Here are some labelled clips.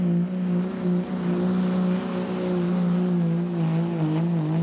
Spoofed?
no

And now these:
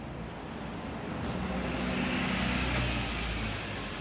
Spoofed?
no